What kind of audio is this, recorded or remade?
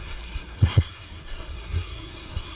remade